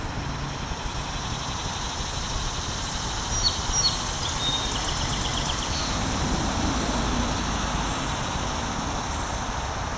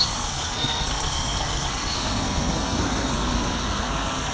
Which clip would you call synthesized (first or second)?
second